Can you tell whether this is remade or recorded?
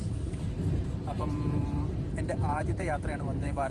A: remade